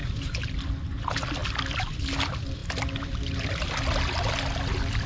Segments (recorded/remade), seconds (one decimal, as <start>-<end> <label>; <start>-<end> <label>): 0.0-5.1 recorded